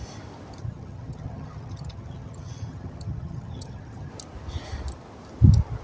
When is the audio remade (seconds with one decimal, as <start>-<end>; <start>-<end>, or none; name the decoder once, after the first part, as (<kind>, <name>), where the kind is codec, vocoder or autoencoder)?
0.6-4.1 (vocoder, HiFi-GAN)